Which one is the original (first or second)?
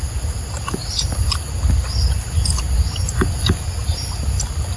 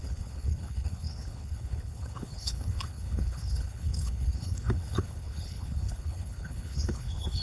first